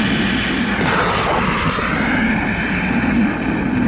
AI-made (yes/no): no